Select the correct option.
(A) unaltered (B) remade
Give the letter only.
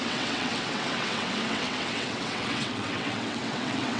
B